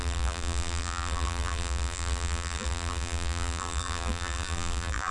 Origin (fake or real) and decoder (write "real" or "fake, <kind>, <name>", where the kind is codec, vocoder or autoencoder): fake, vocoder, BigVGAN v2